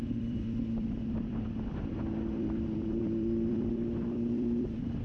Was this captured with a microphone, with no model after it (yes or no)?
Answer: no